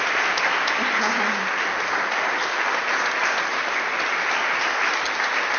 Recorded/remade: recorded